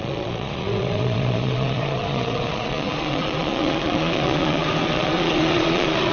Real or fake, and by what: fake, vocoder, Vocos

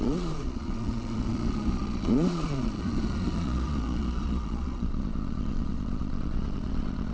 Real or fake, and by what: fake, vocoder, Vocos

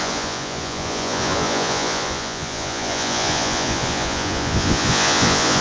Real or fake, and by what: fake, vocoder, Vocos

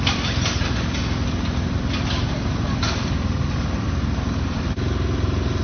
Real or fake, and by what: real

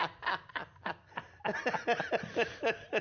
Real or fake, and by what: real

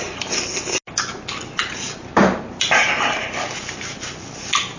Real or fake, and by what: real